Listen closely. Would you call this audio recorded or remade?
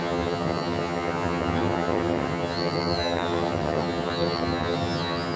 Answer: remade